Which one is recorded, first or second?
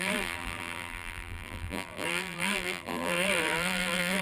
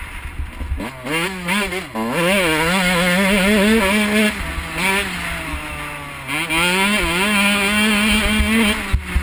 second